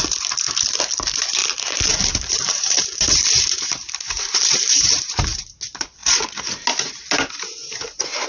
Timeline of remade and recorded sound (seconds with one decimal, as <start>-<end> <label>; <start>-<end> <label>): 0.0-1.4 recorded; 1.4-5.6 remade; 5.6-8.3 recorded